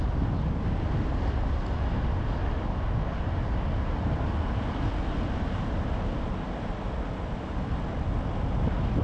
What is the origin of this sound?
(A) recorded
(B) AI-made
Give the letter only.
A